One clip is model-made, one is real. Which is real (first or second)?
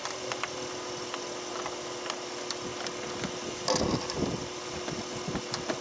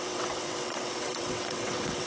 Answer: first